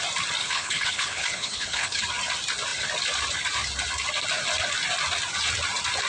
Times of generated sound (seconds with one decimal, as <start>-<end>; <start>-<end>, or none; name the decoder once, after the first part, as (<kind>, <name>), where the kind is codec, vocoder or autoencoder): 0.4-2.0 (codec, HILCodec)